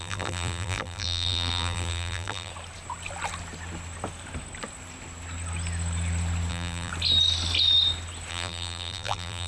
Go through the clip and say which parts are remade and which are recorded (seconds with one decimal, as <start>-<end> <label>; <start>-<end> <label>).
0.0-2.5 remade; 2.5-6.5 recorded; 6.5-6.9 remade; 6.9-8.3 recorded; 8.3-9.5 remade